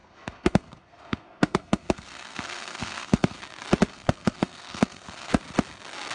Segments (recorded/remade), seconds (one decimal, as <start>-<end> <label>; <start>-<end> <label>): 0.0-3.4 remade; 3.4-3.9 recorded; 3.9-5.3 remade; 5.3-6.1 recorded